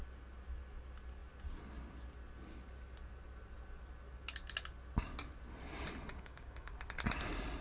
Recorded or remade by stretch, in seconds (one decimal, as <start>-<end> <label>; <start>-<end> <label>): 0.0-6.1 recorded; 6.1-6.7 remade; 6.7-7.6 recorded